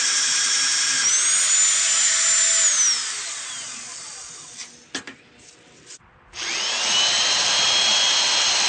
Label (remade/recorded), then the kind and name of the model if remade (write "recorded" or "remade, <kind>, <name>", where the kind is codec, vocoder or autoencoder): recorded